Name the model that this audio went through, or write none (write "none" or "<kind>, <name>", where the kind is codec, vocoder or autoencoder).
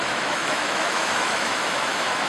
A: autoencoder, DAC-VAE